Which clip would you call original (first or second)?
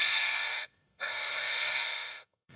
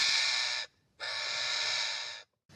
second